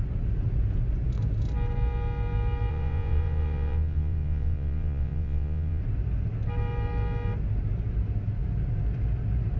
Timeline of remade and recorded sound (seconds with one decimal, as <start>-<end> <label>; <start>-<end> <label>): 0.0-2.7 recorded; 2.7-5.8 remade; 5.8-9.6 recorded